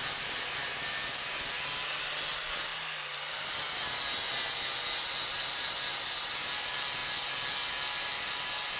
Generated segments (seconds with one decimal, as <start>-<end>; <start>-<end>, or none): none